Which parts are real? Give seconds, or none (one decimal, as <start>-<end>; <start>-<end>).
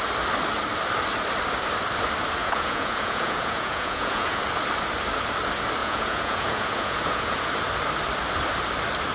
0.0-2.4; 4.4-5.8; 7.5-9.1